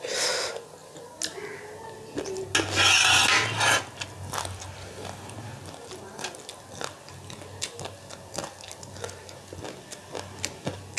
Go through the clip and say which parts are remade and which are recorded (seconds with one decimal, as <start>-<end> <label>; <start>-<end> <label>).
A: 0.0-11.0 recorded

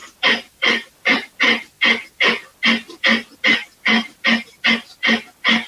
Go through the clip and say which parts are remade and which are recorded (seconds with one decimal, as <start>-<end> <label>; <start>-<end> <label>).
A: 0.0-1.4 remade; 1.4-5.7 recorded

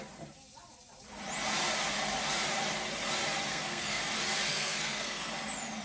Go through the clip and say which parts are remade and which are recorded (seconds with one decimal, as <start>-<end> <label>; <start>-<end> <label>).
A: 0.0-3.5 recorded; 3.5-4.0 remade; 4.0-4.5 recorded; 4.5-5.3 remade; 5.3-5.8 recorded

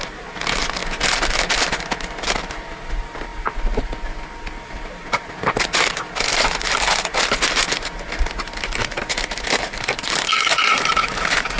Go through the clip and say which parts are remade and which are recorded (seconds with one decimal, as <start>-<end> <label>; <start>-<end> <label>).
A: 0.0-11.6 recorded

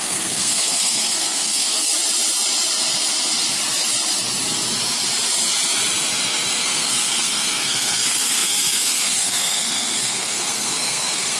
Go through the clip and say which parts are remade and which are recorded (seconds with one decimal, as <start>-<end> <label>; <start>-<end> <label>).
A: 0.0-1.9 remade; 1.9-6.6 recorded; 6.6-11.4 remade

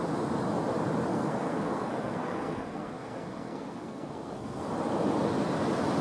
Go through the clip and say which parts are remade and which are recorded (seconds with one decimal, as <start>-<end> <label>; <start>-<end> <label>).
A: 0.0-1.1 recorded; 1.1-4.7 remade; 4.7-6.0 recorded

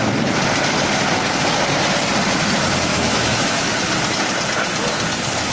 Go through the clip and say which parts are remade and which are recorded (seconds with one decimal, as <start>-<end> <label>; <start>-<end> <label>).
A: 0.0-2.9 recorded; 2.9-3.7 remade; 3.7-5.5 recorded